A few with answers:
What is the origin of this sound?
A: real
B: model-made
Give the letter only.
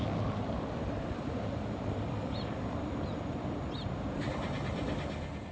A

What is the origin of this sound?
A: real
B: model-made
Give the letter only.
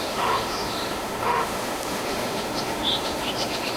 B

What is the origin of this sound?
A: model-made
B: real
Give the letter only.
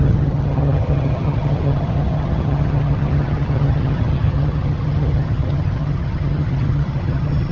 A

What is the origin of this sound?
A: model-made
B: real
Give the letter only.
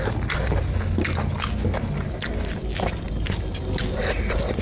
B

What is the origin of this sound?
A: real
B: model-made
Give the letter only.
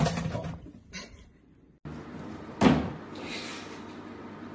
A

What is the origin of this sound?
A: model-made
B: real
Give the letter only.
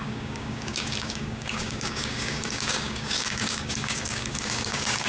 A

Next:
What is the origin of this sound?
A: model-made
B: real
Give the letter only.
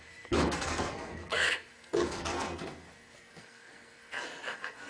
A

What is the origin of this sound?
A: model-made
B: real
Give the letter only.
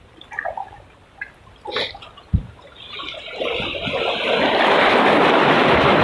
B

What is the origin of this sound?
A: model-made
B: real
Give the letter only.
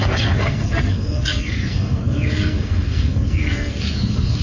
A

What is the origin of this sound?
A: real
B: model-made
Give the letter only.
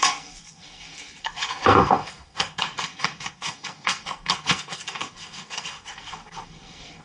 B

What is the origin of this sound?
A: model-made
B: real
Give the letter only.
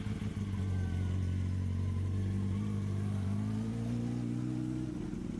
B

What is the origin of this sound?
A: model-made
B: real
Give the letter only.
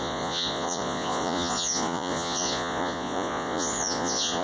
A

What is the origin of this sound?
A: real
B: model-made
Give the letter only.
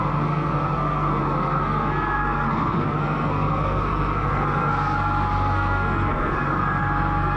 B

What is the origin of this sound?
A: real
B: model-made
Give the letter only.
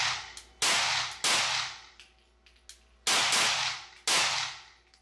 A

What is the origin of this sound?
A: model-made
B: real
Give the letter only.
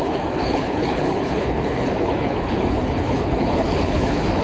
A